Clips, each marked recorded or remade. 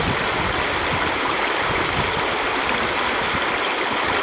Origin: recorded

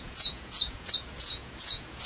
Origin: remade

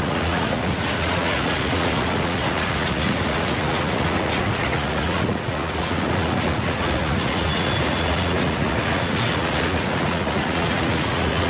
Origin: remade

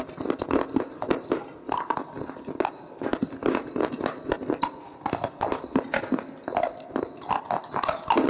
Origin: recorded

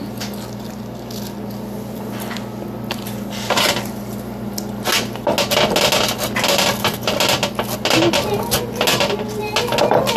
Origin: recorded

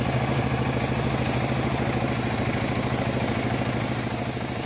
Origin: recorded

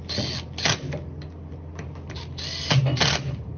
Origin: recorded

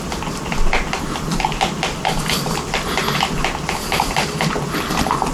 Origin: recorded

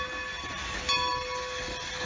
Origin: recorded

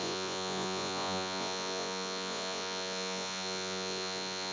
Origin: remade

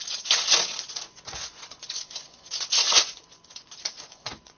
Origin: remade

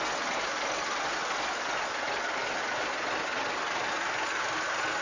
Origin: recorded